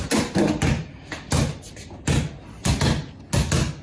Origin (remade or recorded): recorded